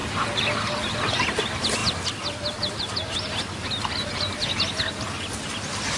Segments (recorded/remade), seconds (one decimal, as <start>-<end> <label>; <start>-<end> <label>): 0.0-6.0 recorded